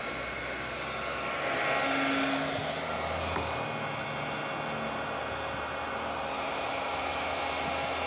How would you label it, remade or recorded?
recorded